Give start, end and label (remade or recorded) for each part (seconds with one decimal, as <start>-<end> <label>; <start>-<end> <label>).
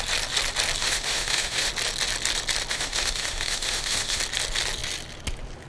0.0-0.8 recorded; 0.8-1.7 remade; 1.7-2.7 recorded; 2.7-4.2 remade; 4.2-5.7 recorded